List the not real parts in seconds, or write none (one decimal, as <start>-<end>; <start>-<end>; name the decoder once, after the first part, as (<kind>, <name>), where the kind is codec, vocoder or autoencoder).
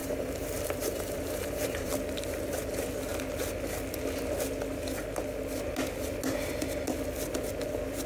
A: 0.0-1.9 (vocoder, BigVGAN v2)